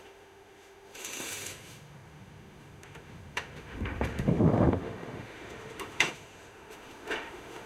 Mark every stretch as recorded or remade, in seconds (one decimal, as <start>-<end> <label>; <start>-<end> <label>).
0.0-7.7 remade